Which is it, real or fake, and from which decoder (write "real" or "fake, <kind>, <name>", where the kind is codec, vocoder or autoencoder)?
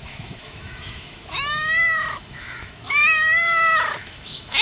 fake, autoencoder, DAC-VAE